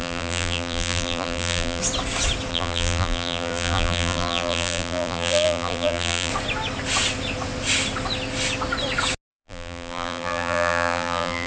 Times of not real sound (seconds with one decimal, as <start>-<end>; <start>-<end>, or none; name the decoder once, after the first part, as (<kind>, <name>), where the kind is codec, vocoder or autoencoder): 0.0-1.8 (vocoder, BigVGAN v2); 2.5-6.3; 9.3-11.5